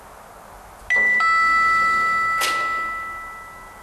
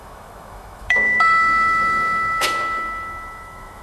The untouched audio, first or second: first